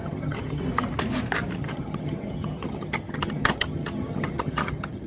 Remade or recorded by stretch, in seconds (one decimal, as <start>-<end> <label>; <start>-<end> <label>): 0.0-0.6 remade; 0.6-1.6 recorded; 1.6-5.1 remade